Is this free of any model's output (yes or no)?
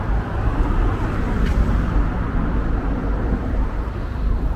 no